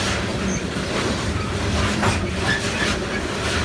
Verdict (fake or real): fake